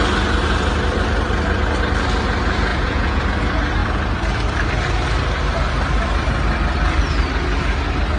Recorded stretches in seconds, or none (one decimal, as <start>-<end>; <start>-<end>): 0.0-2.7; 3.2-8.2